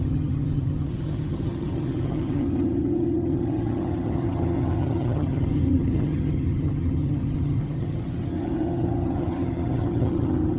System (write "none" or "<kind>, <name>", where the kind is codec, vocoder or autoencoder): vocoder, HiFi-GAN